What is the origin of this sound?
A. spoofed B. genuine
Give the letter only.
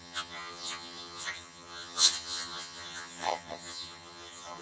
A